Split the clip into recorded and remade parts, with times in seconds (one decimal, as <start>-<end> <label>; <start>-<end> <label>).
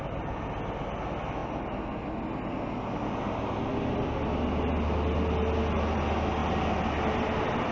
0.0-7.7 recorded